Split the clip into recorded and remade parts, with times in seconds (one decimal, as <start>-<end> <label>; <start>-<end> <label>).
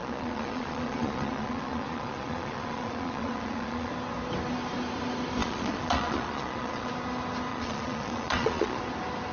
0.0-3.9 remade; 3.9-5.4 recorded; 5.4-6.9 remade; 6.9-7.5 recorded; 7.5-8.8 remade; 8.8-9.3 recorded